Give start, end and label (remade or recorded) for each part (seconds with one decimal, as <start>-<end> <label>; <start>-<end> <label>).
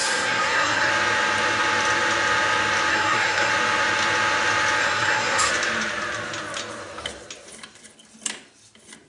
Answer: 0.0-0.9 remade; 0.9-2.9 recorded; 2.9-3.5 remade; 3.5-4.8 recorded; 4.8-5.5 remade; 5.5-9.1 recorded